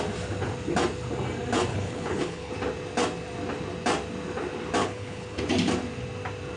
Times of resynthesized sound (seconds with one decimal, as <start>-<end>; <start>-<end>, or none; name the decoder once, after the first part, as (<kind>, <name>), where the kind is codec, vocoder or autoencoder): 1.7-2.5 (codec, HILCodec); 4.8-5.4